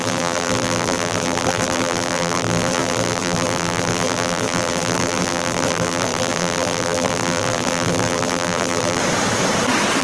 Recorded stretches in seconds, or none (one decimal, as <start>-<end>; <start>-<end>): 9.0-10.0